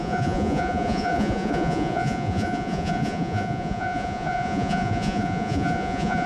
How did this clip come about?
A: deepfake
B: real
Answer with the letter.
A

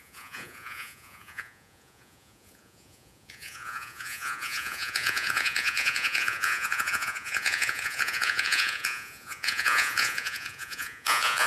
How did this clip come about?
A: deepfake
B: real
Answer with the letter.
A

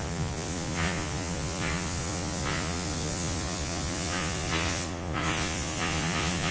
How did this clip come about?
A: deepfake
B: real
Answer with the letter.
A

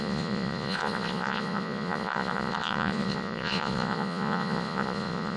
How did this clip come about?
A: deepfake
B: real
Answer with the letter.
A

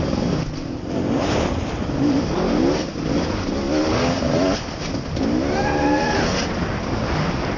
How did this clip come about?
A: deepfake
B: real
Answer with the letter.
B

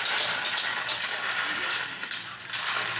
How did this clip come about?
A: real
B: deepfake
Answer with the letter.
A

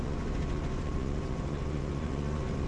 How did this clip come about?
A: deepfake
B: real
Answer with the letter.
A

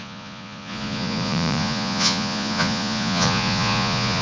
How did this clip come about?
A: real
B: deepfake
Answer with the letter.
B